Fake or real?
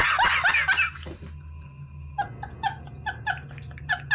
real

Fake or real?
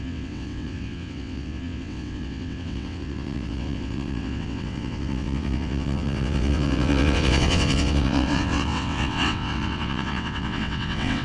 fake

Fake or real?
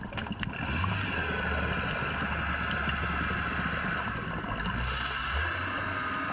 real